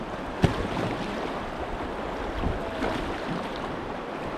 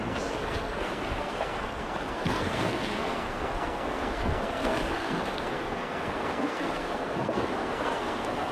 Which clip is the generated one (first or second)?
second